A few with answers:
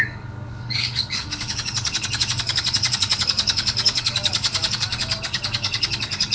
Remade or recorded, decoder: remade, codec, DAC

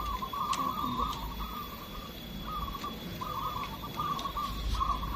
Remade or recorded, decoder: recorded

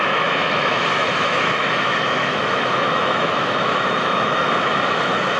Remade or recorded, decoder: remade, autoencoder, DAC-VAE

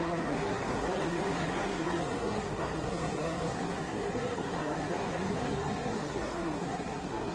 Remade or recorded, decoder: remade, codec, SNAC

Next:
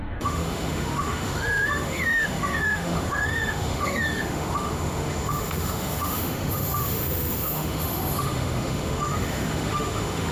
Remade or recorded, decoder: remade, autoencoder, DAC-VAE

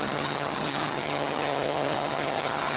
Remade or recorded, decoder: remade, vocoder, HiFi-GAN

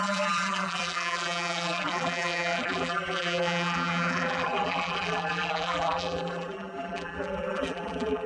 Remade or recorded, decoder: remade, vocoder, BigVGAN v2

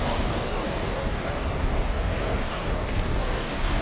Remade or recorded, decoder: remade, codec, DAC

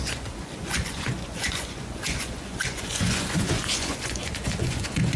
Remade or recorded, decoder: remade, vocoder, Vocos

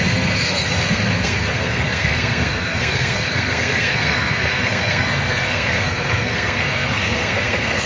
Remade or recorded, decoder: remade, codec, SNAC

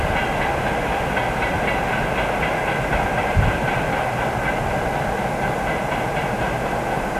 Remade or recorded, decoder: recorded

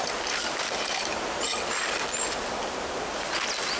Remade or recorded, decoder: recorded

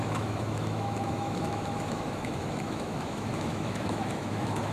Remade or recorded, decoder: remade, autoencoder, DAC-VAE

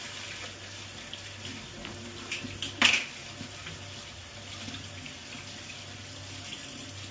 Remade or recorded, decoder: recorded